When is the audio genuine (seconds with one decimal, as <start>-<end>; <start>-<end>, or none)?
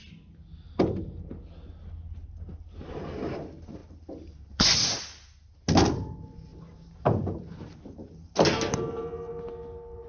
0.0-10.1